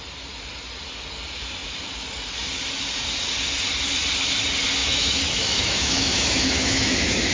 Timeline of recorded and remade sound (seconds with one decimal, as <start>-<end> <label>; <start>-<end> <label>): 0.0-4.8 recorded; 4.8-7.3 remade